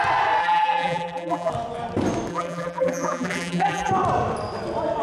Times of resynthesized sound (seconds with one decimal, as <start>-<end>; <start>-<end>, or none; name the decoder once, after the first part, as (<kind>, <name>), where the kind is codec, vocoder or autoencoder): 0.4-1.5 (vocoder, BigVGAN v2); 2.3-3.9